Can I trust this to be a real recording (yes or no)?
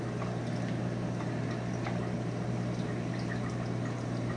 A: yes